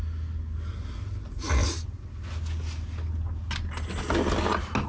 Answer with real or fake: real